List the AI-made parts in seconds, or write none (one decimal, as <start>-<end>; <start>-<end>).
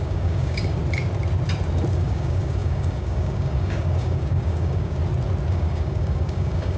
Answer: 0.0-0.8; 1.9-5.0; 5.5-6.8